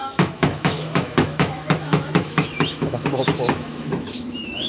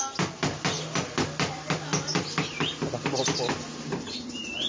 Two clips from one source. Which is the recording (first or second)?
second